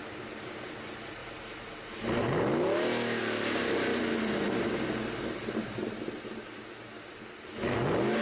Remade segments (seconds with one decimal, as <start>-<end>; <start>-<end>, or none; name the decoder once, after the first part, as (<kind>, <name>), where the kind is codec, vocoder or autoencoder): none